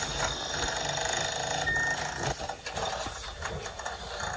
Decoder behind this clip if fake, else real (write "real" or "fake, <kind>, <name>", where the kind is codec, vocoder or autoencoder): real